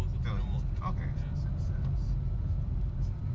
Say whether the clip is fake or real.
real